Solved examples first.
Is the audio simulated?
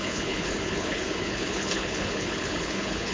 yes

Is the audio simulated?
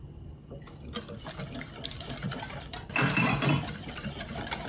yes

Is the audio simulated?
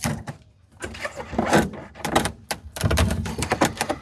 yes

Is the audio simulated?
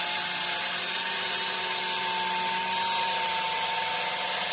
no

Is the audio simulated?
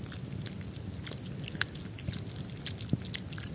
no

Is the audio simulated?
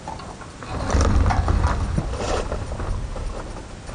no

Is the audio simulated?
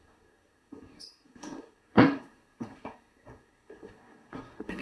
yes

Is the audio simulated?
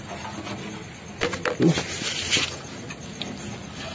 no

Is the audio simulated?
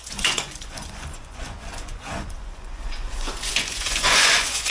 yes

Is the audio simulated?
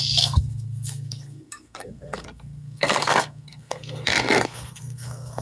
yes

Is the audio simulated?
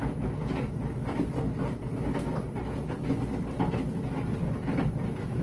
no